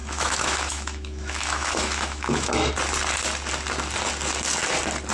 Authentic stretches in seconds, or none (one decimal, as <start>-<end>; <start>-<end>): 2.7-5.1